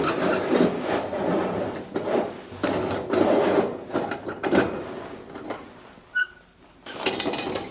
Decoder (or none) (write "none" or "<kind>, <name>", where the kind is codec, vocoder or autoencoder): none